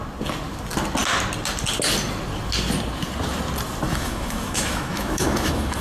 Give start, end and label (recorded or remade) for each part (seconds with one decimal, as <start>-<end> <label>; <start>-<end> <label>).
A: 0.0-3.9 recorded; 3.9-5.8 remade